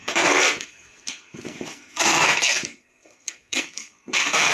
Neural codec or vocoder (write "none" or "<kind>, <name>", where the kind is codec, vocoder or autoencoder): codec, SNAC